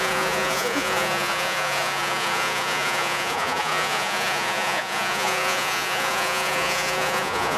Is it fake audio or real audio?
fake